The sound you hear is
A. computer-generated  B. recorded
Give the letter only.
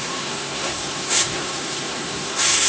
A